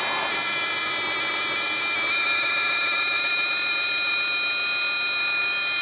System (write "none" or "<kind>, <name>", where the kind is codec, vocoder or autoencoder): none